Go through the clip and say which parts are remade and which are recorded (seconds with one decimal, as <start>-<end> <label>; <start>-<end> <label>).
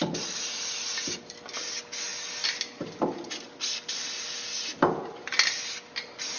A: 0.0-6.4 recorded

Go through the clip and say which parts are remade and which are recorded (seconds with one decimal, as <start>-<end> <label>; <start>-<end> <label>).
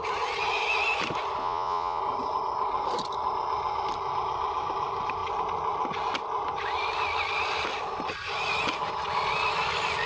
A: 0.0-1.4 recorded; 1.4-2.0 remade; 2.0-10.1 recorded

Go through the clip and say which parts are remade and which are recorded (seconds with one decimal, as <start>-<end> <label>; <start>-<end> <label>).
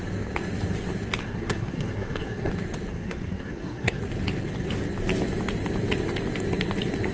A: 0.0-1.2 recorded; 1.2-2.5 remade; 2.5-2.9 recorded; 2.9-4.0 remade; 4.0-7.1 recorded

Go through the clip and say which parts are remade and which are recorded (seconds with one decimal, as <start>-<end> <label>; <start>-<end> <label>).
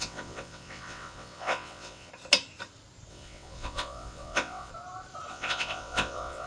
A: 0.0-2.1 remade; 2.1-3.1 recorded; 3.1-4.7 remade; 4.7-5.3 recorded; 5.3-6.5 remade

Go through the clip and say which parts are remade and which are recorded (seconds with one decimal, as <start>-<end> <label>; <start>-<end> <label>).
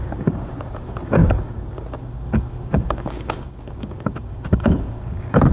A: 0.0-5.5 remade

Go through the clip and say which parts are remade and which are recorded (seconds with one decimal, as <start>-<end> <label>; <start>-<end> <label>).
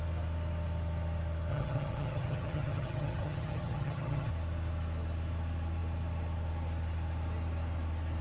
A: 0.0-1.5 recorded; 1.5-4.3 remade; 4.3-8.2 recorded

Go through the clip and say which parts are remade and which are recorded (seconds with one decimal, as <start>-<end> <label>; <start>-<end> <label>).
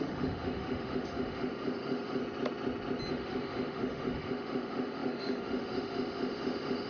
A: 0.0-2.2 remade; 2.2-3.1 recorded; 3.1-6.9 remade